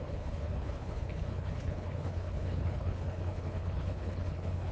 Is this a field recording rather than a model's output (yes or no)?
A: no